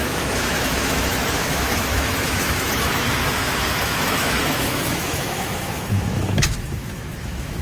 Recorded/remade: remade